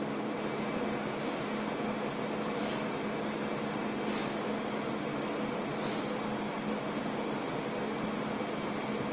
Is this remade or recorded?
recorded